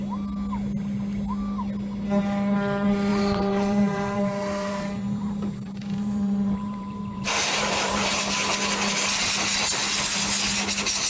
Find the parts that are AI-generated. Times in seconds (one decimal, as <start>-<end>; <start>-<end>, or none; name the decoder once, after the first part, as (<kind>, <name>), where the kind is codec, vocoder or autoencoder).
3.1-8.2 (vocoder, BigVGAN v2)